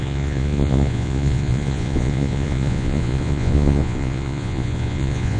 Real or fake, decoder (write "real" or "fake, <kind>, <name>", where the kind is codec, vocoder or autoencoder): fake, vocoder, Vocos